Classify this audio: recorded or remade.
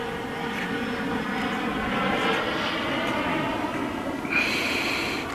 recorded